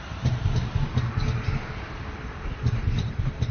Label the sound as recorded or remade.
recorded